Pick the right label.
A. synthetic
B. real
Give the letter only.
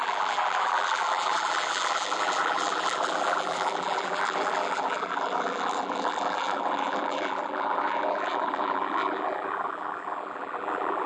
A